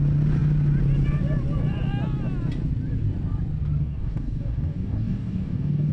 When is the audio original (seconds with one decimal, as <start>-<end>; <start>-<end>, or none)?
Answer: 0.0-3.8